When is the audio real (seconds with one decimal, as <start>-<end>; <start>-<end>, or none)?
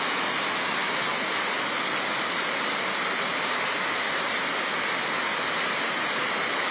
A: 0.0-6.7